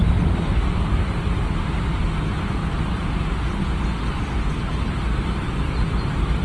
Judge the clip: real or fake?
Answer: real